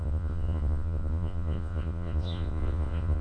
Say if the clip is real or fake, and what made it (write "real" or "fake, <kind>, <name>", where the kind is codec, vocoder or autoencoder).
fake, vocoder, Vocos